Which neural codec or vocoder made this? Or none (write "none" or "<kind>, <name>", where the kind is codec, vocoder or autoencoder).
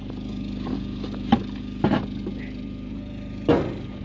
none